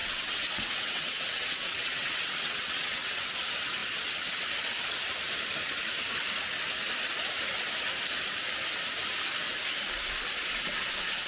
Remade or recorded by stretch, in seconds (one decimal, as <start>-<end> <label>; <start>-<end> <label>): 0.0-3.3 remade; 3.3-11.3 recorded